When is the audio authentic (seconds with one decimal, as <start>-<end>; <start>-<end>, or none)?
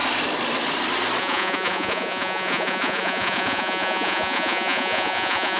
0.0-1.2